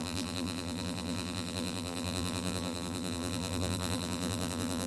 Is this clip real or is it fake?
fake